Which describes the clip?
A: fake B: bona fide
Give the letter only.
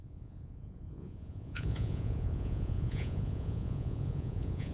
A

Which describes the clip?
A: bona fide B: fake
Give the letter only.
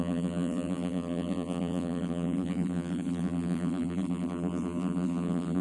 B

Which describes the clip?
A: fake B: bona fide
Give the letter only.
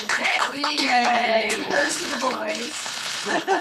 A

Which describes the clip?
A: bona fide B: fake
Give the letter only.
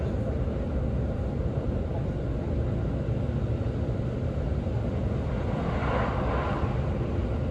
A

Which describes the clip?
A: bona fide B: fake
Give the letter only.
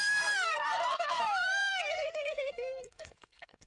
B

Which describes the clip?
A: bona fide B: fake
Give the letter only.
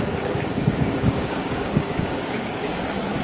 B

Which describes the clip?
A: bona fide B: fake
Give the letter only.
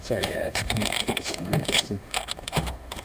B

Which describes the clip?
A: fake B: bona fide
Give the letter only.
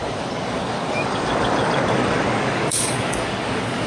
A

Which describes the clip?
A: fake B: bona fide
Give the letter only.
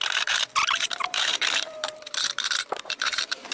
A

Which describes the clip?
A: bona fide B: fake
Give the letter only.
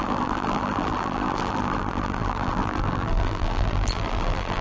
B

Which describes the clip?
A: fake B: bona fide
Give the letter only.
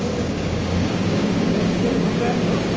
A